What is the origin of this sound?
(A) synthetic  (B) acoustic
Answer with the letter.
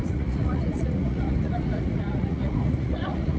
A